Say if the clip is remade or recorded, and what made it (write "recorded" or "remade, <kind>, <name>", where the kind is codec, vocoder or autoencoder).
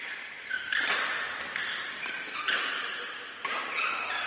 recorded